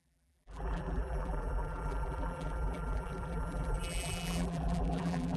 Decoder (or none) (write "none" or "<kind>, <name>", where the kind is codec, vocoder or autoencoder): vocoder, BigVGAN v2